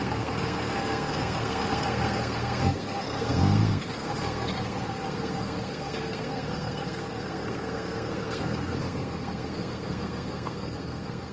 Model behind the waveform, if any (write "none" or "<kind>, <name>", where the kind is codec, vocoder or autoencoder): codec, SNAC